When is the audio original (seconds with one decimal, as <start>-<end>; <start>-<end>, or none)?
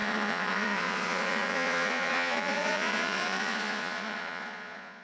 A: none